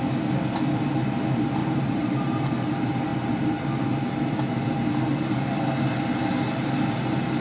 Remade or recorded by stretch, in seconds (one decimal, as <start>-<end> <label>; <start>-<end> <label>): 0.0-1.6 recorded; 1.6-2.5 remade; 2.5-7.4 recorded

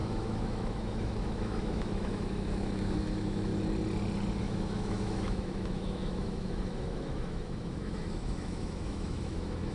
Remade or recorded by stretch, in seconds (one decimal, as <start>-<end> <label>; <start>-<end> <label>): 0.0-3.5 remade; 3.5-4.4 recorded; 4.4-9.7 remade

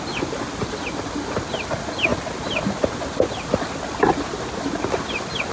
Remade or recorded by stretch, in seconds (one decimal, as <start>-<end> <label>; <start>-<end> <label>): 0.0-5.5 recorded

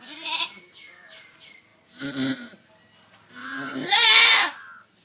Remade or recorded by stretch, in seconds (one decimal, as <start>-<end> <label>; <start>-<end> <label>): 0.0-5.0 recorded